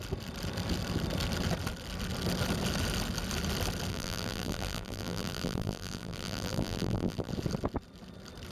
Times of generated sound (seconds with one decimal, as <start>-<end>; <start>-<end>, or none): 3.9-7.3